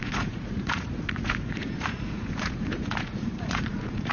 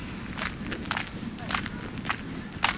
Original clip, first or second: second